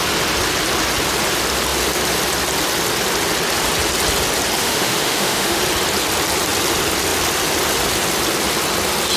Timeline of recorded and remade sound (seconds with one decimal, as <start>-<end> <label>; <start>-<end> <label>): 0.0-4.6 recorded; 4.6-5.6 remade; 5.6-9.2 recorded